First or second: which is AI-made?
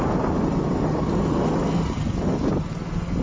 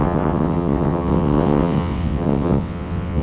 second